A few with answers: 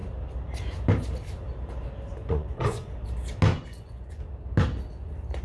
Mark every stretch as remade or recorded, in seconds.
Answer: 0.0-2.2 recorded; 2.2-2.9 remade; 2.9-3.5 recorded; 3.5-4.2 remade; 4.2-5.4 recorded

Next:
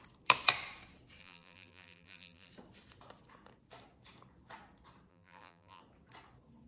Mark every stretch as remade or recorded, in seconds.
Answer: 0.0-1.2 recorded; 1.2-2.5 remade; 2.5-5.1 recorded; 5.1-5.8 remade; 5.8-6.7 recorded

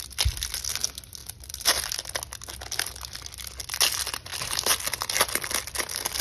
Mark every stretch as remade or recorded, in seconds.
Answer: 0.0-4.3 recorded; 4.3-5.6 remade; 5.6-6.2 recorded

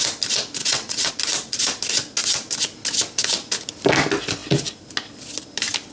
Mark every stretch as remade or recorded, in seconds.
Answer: 0.0-0.6 recorded; 0.6-1.1 remade; 1.1-5.9 recorded